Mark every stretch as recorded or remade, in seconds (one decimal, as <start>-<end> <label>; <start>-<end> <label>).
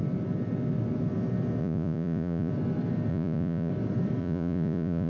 0.0-1.6 recorded; 1.6-2.5 remade; 2.5-3.1 recorded; 3.1-3.7 remade; 3.7-4.2 recorded; 4.2-5.1 remade